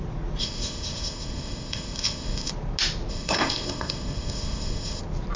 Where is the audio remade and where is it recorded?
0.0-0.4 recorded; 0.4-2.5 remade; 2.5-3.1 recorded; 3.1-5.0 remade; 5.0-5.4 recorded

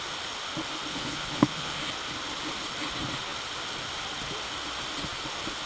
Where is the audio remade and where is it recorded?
0.0-0.9 recorded; 0.9-1.9 remade; 1.9-5.7 recorded

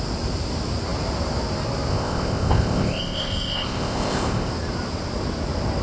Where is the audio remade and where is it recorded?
0.0-1.9 recorded; 1.9-4.5 remade; 4.5-5.8 recorded

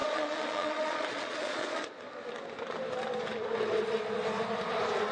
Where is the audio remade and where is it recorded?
0.0-2.0 remade; 2.0-5.1 recorded

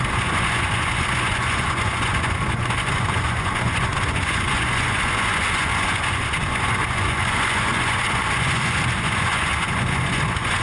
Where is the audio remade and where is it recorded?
0.0-10.6 remade

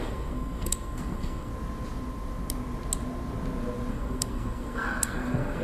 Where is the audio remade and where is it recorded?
0.0-1.5 remade; 1.5-3.9 recorded; 3.9-5.6 remade

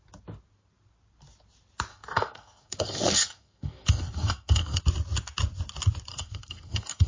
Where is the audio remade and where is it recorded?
0.0-1.9 recorded; 1.9-4.8 remade; 4.8-6.1 recorded; 6.1-7.1 remade

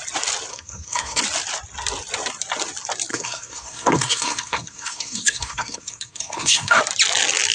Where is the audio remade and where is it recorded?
0.0-0.5 recorded; 0.5-1.2 remade; 1.2-3.1 recorded; 3.1-6.8 remade; 6.8-7.5 recorded